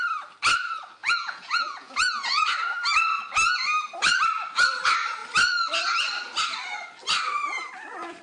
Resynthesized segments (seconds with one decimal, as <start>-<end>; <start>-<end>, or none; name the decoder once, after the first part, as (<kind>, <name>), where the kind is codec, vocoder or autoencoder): 1.0-2.4 (vocoder, Vocos)